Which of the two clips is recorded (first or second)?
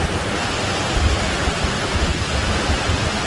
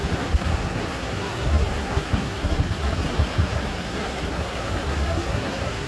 first